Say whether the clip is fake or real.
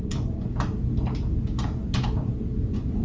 real